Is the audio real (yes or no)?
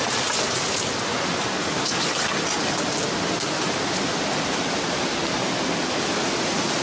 yes